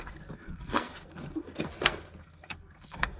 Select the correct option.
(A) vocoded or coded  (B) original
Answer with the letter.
A